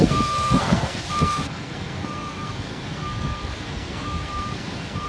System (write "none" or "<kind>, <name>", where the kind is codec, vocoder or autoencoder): codec, SNAC